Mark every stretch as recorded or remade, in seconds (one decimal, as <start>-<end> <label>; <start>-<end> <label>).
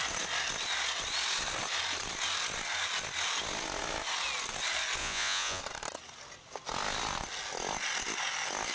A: 0.0-5.0 recorded; 5.0-5.6 remade; 5.6-8.7 recorded